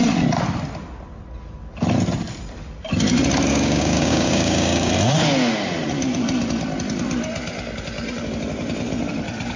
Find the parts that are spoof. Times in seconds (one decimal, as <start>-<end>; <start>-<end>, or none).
3.5-4.9